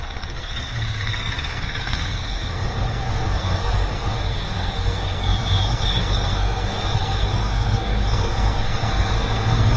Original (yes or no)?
no